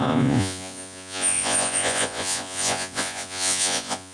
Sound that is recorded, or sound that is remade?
remade